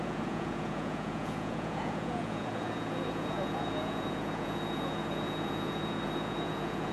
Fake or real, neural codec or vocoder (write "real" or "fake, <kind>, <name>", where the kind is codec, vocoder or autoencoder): fake, vocoder, Vocos